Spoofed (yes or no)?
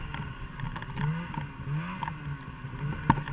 no